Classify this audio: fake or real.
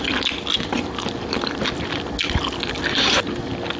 real